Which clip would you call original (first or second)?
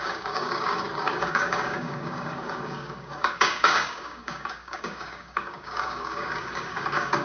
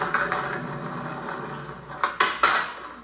second